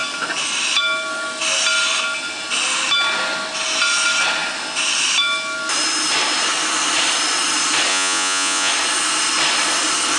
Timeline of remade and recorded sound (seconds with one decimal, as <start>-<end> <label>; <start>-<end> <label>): 0.0-7.9 recorded; 7.9-8.7 remade; 8.7-10.2 recorded